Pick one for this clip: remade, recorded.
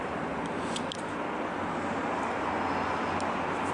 recorded